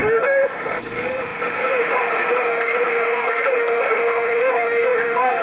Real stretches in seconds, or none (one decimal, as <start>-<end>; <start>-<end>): none